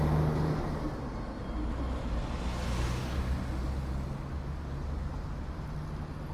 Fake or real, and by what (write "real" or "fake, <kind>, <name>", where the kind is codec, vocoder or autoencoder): real